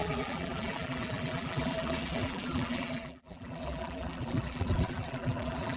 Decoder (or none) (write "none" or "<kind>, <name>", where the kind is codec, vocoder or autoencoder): vocoder, BigVGAN v2